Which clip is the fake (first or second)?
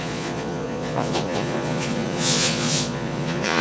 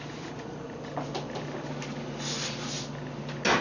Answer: first